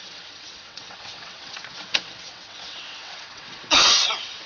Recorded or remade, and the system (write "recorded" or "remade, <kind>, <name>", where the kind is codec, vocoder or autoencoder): remade, vocoder, WaveNeXt